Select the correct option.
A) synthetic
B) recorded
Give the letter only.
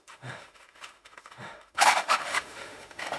A